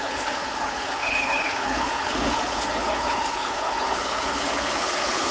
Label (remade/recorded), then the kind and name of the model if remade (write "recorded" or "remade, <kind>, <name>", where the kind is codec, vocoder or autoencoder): remade, codec, HILCodec